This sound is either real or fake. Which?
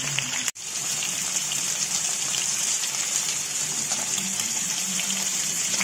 fake